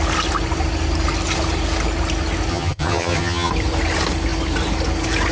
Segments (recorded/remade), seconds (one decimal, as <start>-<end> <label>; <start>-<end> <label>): 0.0-2.5 recorded; 2.5-3.5 remade; 3.5-5.3 recorded